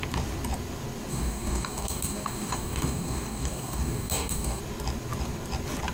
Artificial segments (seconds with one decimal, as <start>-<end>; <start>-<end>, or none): 1.1-4.6